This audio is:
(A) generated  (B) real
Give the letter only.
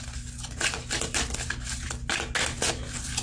B